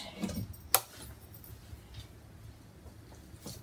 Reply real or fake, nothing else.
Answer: real